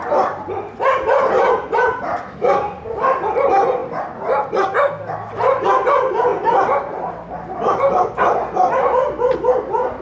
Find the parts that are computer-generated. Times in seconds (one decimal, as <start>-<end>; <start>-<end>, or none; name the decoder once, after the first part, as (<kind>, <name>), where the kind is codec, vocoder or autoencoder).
0.0-0.8 (vocoder, BigVGAN v2); 3.8-5.1; 6.3-7.8